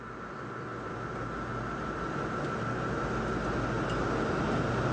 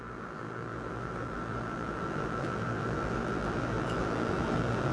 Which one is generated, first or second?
second